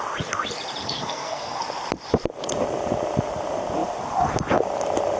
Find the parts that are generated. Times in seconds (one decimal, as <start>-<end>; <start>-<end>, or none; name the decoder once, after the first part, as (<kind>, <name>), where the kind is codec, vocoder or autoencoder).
0.8-1.6 (codec, SNAC)